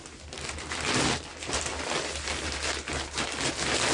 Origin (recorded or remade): recorded